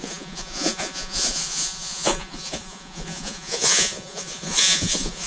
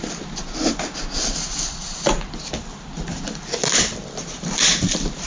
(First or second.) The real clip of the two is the second